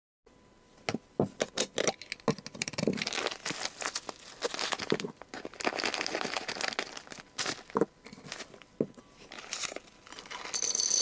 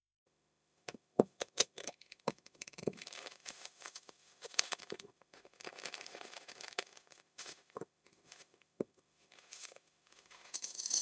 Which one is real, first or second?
first